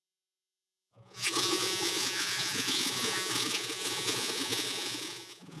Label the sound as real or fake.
fake